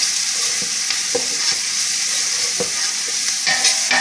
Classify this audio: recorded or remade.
recorded